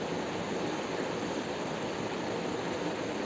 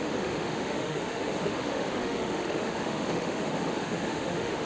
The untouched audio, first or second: first